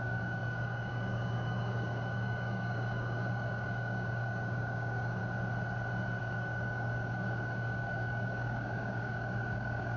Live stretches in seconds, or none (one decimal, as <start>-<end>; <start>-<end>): 5.2-6.2